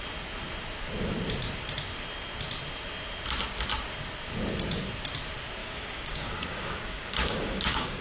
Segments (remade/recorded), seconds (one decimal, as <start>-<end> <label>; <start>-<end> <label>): 0.0-5.6 recorded; 5.6-8.0 remade